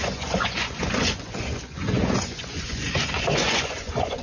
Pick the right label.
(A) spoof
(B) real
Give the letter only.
A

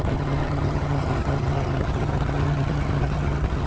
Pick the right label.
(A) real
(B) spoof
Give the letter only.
B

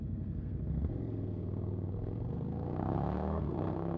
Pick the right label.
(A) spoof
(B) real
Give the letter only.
A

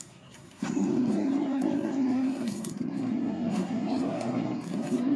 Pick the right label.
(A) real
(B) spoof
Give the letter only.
B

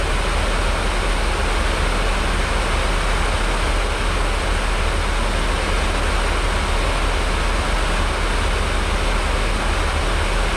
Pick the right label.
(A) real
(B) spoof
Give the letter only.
A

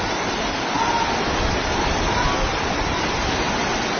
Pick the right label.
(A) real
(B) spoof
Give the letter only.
A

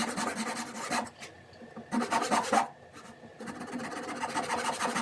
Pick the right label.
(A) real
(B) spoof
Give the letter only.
A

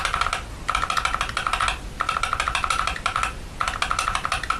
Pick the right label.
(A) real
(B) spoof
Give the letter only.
A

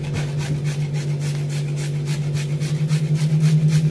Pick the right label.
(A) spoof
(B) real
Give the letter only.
B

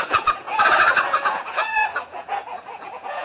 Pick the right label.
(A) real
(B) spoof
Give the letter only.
B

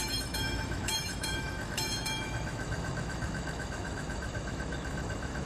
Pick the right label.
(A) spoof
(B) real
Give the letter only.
A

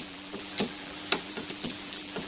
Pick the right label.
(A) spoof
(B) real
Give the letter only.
A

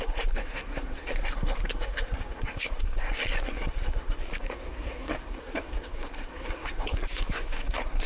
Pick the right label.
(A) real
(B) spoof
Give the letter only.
B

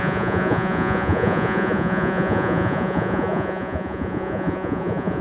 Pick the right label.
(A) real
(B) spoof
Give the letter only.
B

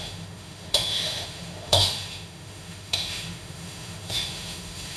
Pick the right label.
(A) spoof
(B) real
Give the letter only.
A